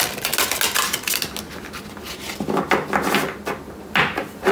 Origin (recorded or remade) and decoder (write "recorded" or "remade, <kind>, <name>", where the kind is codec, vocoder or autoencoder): recorded